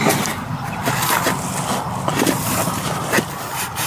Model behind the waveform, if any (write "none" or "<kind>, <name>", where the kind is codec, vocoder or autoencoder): none